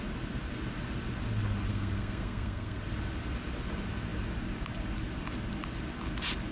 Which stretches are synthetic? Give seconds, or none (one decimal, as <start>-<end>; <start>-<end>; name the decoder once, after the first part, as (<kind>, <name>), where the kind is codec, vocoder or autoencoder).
1.7-2.8 (codec, SNAC)